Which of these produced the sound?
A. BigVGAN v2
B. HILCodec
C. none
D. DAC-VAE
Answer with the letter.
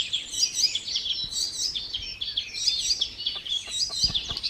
C